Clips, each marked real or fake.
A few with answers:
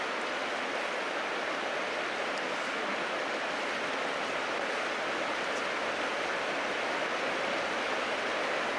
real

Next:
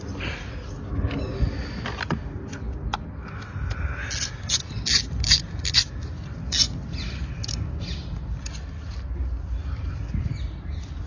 real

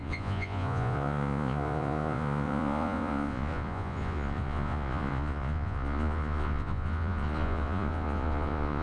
fake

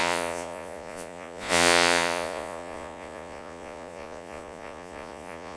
fake